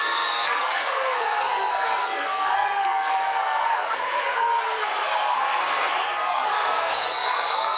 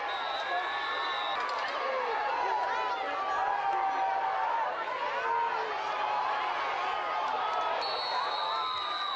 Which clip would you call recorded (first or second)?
second